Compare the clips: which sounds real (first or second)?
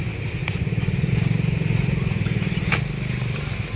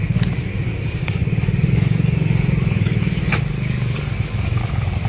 first